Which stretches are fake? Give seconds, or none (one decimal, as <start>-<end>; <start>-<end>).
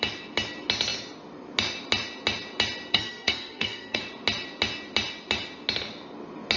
2.9-4.0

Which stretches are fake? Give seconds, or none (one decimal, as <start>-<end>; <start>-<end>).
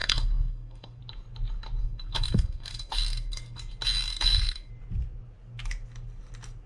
0.0-1.0; 1.8-3.6; 4.1-4.7